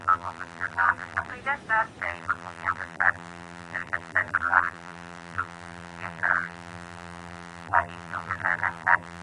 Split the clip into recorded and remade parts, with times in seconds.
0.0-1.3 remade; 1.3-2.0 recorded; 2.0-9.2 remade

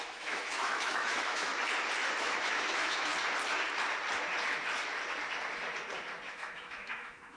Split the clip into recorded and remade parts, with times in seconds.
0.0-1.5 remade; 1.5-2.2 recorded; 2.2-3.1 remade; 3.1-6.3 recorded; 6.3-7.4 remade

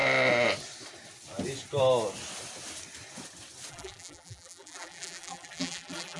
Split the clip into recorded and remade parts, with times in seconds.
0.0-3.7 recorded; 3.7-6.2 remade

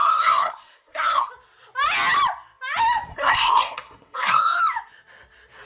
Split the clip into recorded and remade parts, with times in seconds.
0.0-1.3 remade; 1.3-3.1 recorded; 3.1-4.6 remade; 4.6-5.7 recorded

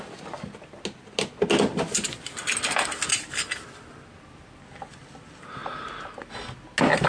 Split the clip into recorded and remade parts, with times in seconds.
0.0-7.1 recorded